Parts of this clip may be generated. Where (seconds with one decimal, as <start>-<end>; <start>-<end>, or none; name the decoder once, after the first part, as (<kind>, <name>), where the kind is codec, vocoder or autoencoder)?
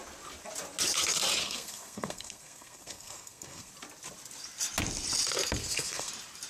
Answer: 1.4-3.7 (codec, SNAC); 5.6-6.1